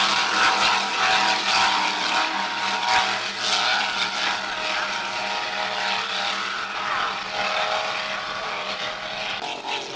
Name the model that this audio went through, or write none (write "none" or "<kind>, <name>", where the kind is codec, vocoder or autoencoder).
none